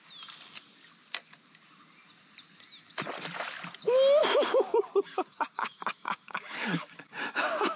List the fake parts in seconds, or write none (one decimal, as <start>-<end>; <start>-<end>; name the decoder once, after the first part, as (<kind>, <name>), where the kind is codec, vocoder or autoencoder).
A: 4.2-7.8 (codec, DAC)